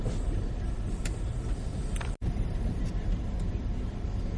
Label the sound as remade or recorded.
remade